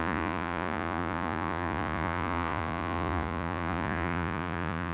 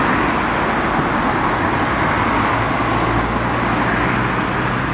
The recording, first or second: second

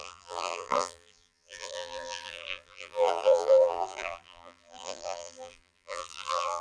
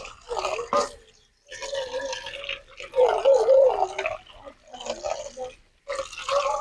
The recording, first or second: second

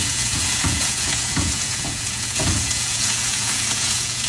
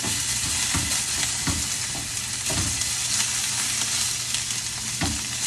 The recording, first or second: second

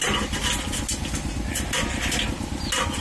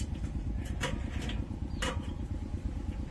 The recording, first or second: first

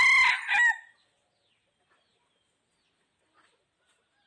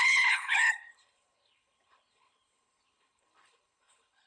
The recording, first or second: first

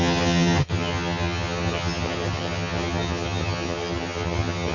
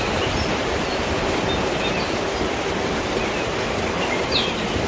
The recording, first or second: second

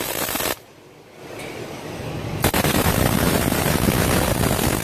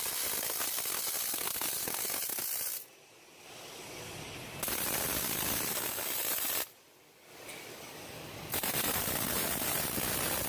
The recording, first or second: first